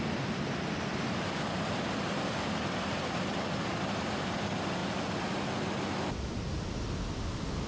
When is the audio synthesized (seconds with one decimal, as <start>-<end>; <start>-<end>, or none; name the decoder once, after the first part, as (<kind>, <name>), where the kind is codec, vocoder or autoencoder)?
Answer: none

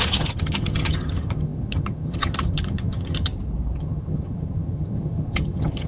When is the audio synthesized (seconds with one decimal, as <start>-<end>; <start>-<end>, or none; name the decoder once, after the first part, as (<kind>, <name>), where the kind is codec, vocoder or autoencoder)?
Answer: 0.0-3.3 (vocoder, HiFi-GAN); 3.8-5.9

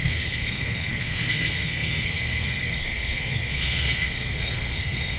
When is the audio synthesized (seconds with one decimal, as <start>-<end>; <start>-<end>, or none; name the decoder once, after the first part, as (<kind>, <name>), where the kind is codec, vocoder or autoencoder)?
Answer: 0.0-5.2 (codec, SNAC)